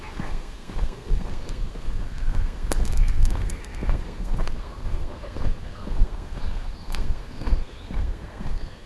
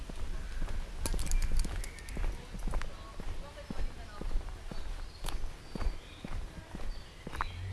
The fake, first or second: first